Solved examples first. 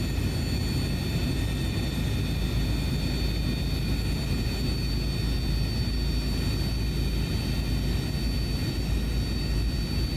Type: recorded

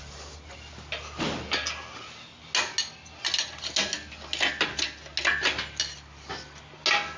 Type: recorded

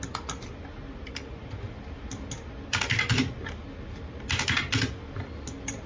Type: recorded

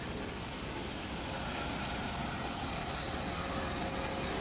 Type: recorded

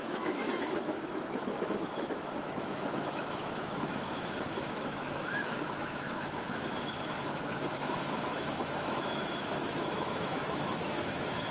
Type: remade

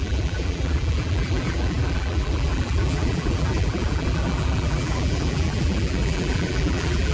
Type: remade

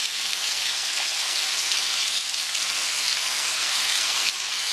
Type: remade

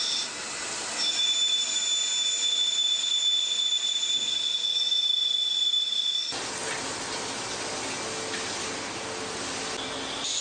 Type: recorded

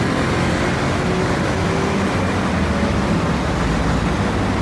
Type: recorded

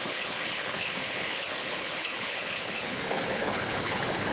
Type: remade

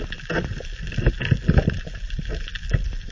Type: recorded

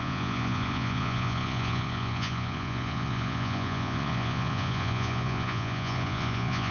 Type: remade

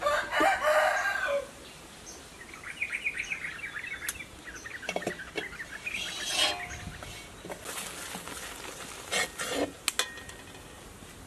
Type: recorded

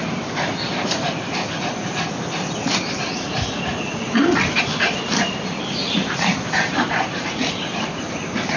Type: remade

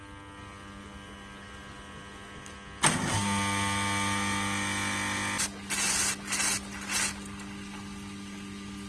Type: recorded